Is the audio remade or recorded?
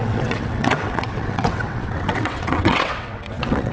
remade